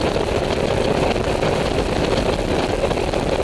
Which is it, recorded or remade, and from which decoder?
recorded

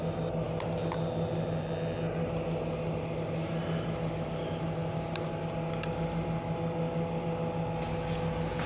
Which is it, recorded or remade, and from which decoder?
recorded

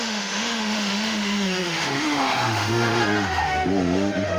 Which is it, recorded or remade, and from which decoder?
remade, autoencoder, DAC-VAE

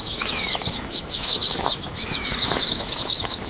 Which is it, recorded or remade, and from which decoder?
remade, autoencoder, DAC-VAE